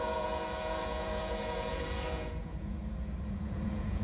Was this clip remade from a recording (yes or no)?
yes